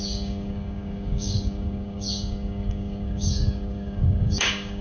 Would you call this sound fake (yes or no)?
yes